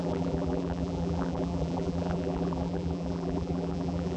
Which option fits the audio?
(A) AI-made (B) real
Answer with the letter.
A